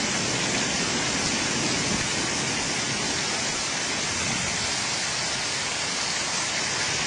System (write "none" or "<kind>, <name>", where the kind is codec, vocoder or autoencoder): none